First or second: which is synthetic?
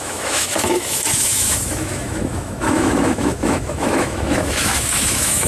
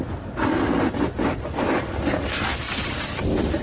first